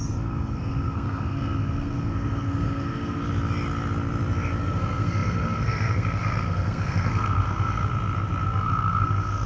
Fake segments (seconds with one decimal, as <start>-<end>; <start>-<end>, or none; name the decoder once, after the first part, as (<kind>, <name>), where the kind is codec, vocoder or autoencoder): 0.0-3.2 (codec, SNAC); 4.6-7.9; 8.4-9.5